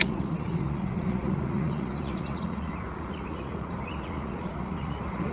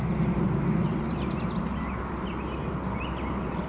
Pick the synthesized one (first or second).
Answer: first